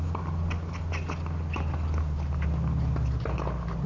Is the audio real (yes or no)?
yes